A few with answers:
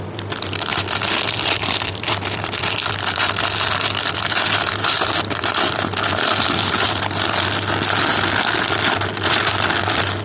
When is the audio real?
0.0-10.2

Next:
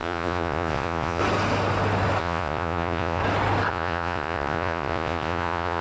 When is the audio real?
1.2-2.2; 3.2-3.7

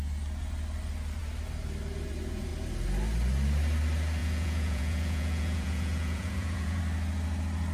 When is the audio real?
0.0-4.2; 6.8-7.7

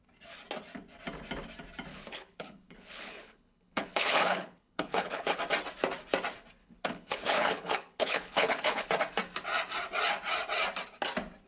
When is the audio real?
0.0-1.9; 5.4-6.6; 8.9-11.5